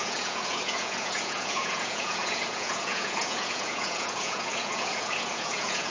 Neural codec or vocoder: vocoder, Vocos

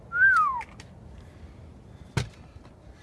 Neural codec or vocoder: none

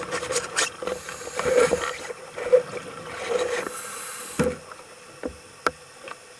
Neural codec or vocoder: none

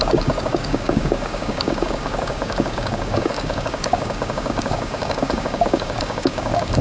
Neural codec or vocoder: codec, DAC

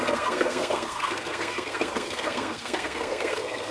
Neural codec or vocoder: codec, SNAC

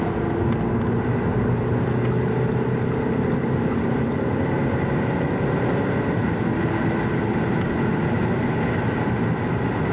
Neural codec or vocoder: none